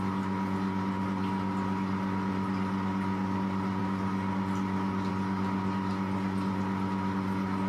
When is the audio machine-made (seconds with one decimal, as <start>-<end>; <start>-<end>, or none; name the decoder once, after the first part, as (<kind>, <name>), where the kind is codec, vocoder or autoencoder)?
none